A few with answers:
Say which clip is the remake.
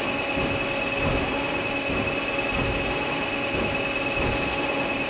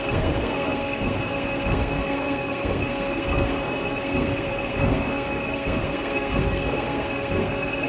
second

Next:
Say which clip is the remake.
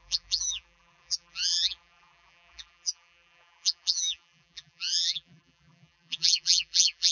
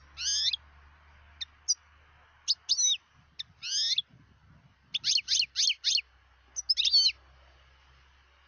first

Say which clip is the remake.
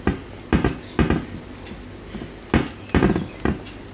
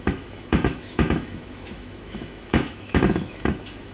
second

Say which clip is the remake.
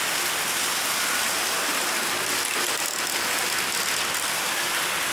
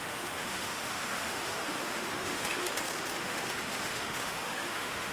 second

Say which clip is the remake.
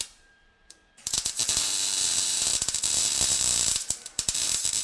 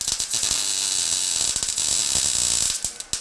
first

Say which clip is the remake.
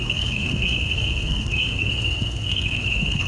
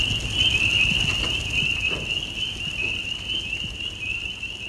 first